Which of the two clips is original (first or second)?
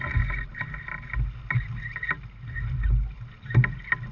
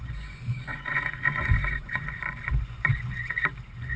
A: first